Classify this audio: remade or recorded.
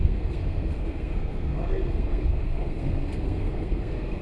remade